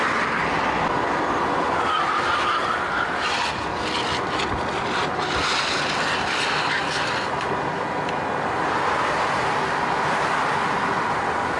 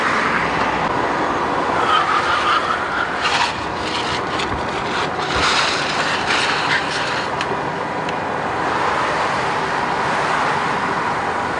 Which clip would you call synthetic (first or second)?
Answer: second